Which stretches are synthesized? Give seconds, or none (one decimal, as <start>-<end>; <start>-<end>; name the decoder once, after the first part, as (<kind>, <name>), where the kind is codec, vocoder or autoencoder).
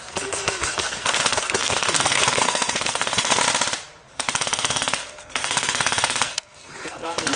0.0-3.4 (codec, SNAC); 4.1-7.4